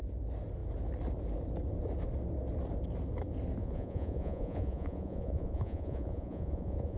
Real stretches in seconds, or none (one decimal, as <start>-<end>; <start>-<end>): 0.0-3.6